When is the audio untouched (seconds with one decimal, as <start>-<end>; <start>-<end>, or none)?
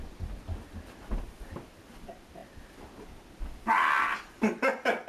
0.0-5.1